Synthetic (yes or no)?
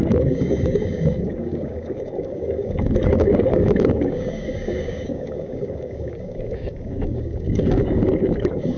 yes